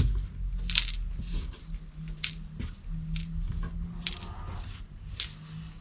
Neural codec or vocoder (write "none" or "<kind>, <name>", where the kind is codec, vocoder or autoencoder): none